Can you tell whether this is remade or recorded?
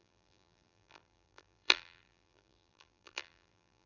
remade